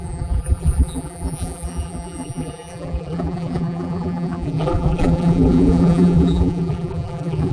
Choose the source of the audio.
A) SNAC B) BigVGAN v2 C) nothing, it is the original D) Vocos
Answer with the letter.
B